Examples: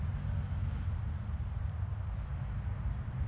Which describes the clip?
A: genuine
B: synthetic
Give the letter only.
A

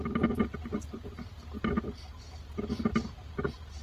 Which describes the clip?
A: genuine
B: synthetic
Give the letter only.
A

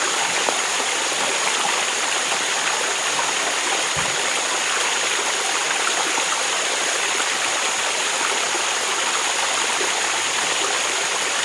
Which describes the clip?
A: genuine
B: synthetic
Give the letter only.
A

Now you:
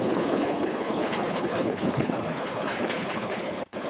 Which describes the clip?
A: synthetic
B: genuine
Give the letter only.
A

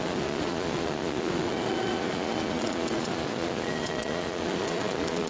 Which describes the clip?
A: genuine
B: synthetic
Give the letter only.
B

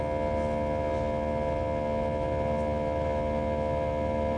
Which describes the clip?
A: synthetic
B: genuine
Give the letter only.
B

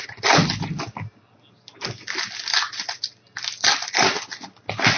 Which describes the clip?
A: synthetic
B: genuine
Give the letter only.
B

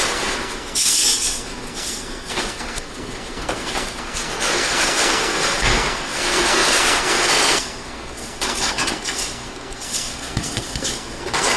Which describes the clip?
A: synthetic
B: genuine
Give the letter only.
A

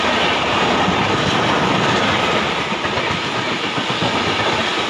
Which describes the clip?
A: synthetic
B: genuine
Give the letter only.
B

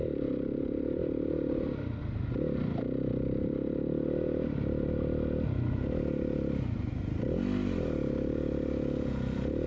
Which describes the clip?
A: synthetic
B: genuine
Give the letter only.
B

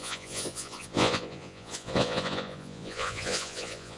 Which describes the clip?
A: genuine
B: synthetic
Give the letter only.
B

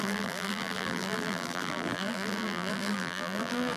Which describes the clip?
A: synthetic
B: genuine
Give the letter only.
A